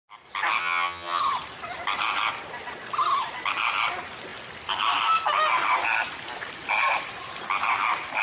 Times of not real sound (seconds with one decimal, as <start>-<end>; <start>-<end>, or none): 0.6-1.2